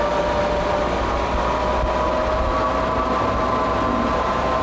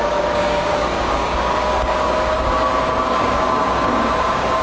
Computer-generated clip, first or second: second